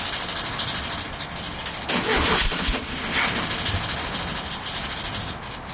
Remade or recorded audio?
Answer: recorded